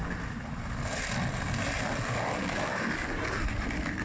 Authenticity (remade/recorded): recorded